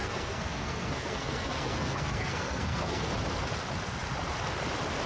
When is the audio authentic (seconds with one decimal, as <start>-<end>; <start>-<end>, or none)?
3.1-5.1